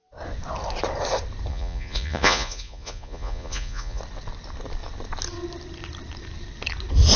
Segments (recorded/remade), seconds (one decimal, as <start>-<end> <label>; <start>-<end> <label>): 0.0-1.5 recorded; 1.5-4.0 remade; 4.0-7.2 recorded